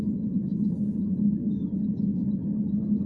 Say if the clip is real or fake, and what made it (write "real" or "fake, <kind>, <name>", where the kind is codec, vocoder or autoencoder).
real